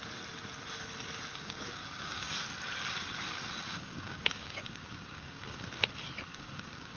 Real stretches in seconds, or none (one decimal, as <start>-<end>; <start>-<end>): 0.0-1.3; 2.3-3.7; 5.4-6.3